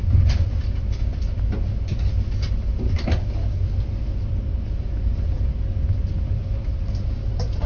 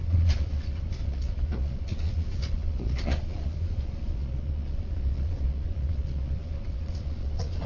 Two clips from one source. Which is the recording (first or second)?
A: first